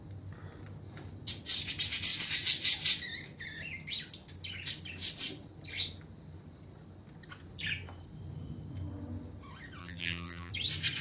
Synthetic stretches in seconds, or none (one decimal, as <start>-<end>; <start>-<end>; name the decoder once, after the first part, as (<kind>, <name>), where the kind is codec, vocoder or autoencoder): 9.8-10.5 (vocoder, BigVGAN v2)